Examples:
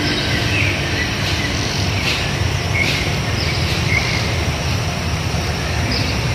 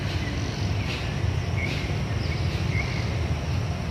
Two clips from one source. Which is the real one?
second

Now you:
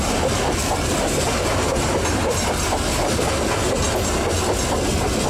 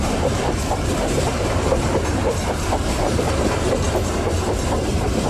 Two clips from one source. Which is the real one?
first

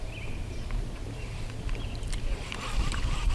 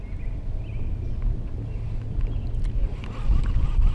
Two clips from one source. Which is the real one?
second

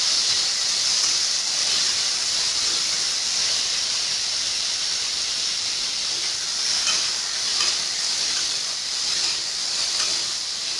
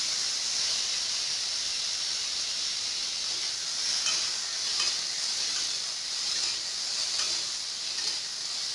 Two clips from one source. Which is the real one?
second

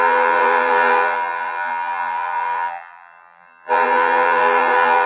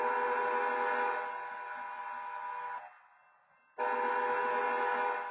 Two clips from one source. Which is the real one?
second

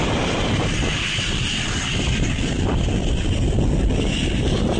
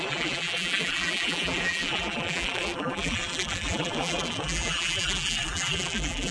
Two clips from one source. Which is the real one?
first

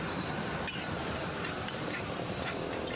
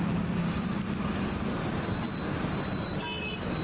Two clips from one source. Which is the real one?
second